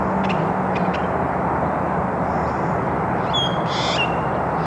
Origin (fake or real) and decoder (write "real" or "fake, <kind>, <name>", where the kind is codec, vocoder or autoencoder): real